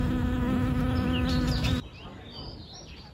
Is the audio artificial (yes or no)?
no